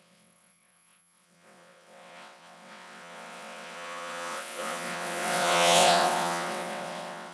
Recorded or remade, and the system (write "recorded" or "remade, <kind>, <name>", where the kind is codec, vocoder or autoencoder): remade, vocoder, WaveNeXt